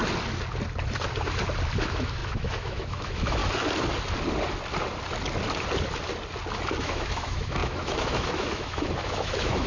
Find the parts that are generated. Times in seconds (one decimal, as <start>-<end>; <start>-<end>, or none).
1.8-3.4; 6.8-9.7